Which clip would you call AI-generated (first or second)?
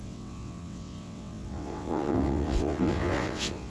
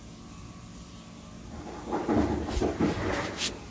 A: first